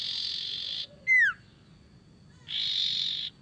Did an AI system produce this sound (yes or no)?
no